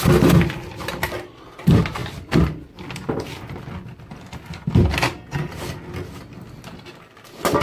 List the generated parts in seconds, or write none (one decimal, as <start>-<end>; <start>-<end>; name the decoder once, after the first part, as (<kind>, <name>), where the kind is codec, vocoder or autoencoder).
none